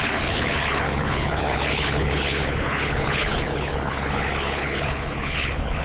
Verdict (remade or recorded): remade